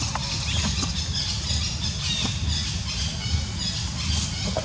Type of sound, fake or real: real